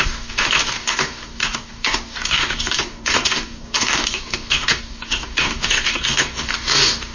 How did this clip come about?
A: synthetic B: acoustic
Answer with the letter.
A